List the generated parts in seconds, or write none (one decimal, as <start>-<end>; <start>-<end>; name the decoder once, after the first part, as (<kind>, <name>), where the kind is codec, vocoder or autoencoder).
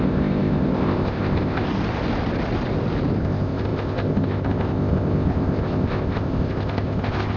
0.0-1.7 (codec, ZipCodec); 3.2-7.4